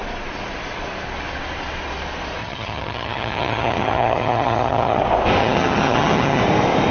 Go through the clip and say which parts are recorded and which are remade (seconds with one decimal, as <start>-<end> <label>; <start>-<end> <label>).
0.0-2.4 recorded; 2.4-5.0 remade; 5.0-5.4 recorded; 5.4-6.4 remade; 6.4-6.9 recorded